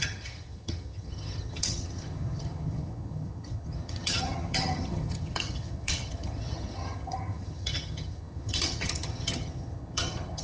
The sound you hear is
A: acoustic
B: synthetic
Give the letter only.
B